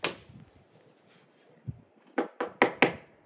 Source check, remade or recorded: recorded